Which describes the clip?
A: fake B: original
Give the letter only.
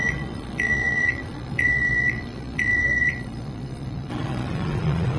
A